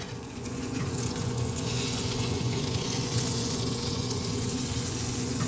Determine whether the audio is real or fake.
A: fake